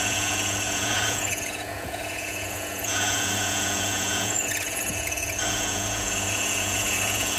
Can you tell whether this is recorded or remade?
remade